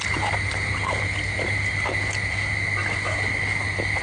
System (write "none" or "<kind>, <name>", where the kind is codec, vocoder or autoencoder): none